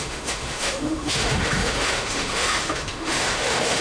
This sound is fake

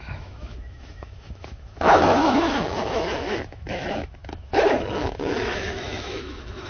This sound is fake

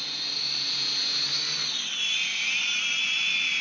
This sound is real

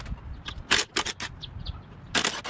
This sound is real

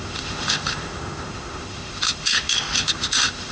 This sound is fake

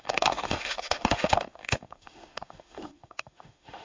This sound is fake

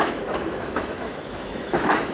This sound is fake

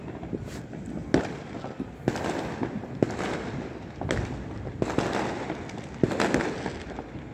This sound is real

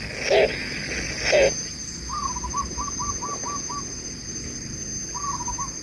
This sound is real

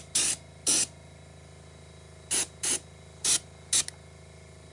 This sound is real